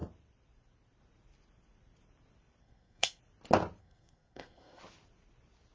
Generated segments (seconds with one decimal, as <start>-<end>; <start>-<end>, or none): 2.6-3.2; 3.8-4.8